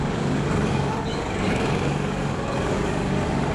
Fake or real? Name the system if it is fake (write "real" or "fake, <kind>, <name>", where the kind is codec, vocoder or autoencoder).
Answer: fake, codec, DAC